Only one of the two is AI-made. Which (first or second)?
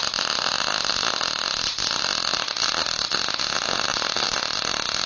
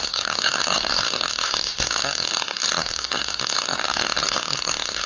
second